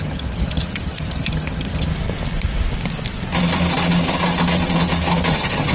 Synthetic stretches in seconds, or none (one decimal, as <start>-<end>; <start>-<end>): 0.0-1.9; 5.3-5.7